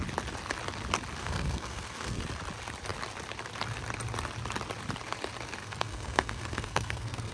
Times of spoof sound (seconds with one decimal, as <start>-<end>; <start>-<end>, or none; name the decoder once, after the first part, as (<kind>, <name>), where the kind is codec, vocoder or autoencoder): 1.2-2.2 (codec, SNAC); 5.6-7.3